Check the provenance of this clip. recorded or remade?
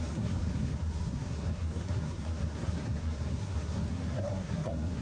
remade